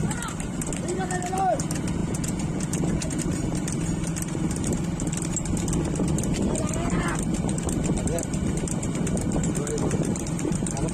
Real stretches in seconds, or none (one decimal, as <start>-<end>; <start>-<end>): 0.0-2.0; 3.2-10.9